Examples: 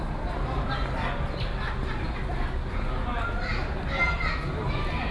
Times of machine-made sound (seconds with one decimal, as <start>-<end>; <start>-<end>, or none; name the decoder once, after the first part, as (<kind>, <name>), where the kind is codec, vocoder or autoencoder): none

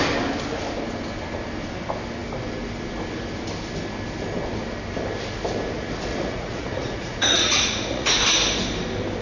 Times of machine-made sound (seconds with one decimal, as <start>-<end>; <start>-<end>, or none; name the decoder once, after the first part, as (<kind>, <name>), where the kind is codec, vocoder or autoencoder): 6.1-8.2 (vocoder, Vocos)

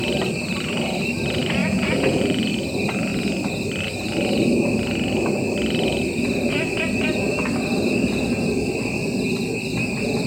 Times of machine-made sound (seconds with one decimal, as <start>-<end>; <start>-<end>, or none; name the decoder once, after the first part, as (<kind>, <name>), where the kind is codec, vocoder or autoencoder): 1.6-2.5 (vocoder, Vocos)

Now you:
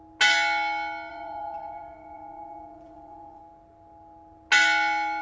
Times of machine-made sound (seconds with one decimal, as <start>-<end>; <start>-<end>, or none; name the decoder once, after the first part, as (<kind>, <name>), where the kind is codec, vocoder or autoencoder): 1.1-3.4 (vocoder, Vocos)

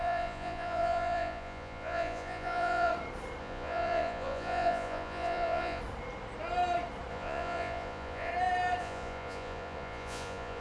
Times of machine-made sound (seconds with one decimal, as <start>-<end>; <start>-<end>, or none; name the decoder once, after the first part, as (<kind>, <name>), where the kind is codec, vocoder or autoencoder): 0.0-2.9 (vocoder, Vocos); 3.4-5.8; 7.1-8.3; 8.8-10.6